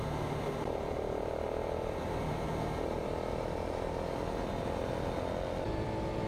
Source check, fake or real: real